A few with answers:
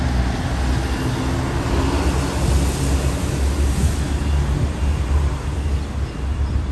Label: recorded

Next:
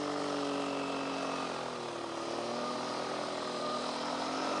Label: recorded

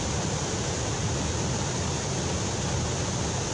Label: remade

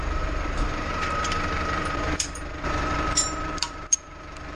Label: remade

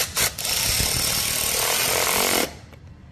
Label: remade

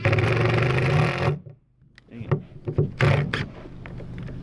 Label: recorded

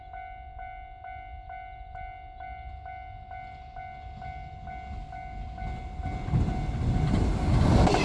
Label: recorded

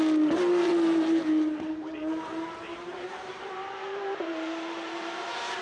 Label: remade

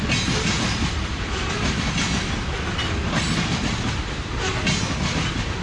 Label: recorded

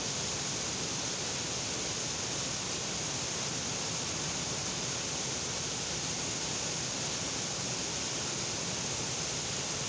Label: recorded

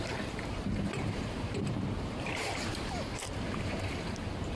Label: remade